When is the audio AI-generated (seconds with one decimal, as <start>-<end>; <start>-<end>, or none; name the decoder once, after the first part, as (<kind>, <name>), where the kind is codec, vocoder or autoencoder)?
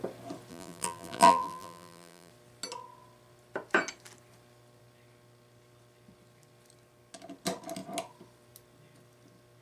0.5-2.3 (vocoder, BigVGAN v2)